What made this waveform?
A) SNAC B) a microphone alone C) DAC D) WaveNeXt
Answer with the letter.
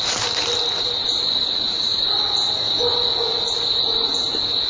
B